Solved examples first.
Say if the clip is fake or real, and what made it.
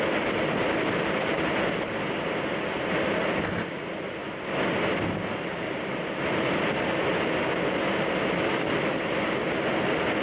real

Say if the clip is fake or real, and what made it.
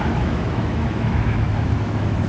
fake, autoencoder, DAC-VAE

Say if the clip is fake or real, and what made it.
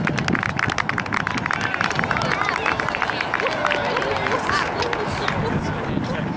real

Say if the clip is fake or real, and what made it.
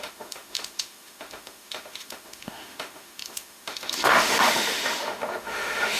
fake, autoencoder, DAC-VAE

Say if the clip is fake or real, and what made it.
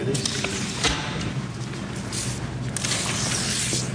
real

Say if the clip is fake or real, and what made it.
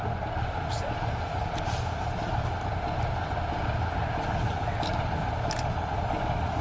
real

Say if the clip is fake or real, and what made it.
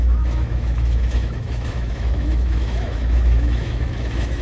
fake, autoencoder, DAC-VAE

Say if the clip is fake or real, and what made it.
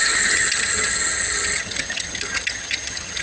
fake, vocoder, HiFi-GAN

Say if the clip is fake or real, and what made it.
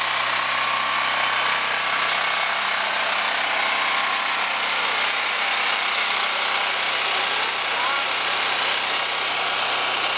real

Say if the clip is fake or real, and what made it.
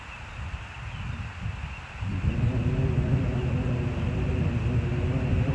real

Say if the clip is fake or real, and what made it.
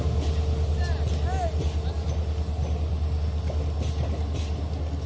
real